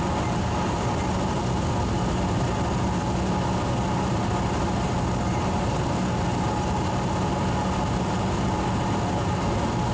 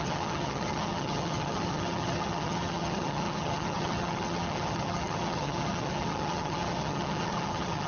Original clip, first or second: first